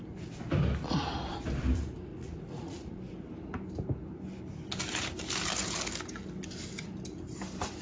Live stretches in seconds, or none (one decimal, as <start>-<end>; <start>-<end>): 0.0-2.1; 3.0-7.8